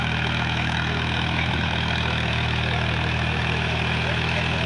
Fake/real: fake